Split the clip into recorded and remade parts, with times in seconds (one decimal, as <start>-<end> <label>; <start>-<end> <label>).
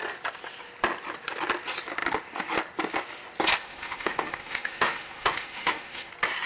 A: 0.0-3.6 recorded; 3.6-6.1 remade; 6.1-6.5 recorded